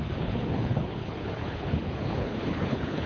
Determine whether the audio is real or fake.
fake